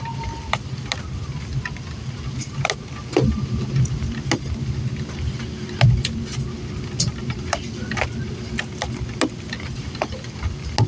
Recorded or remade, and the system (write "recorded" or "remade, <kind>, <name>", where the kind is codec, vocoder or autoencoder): recorded